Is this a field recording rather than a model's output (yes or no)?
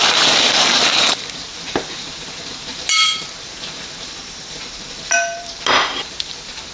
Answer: no